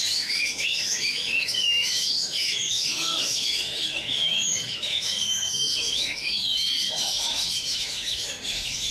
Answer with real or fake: fake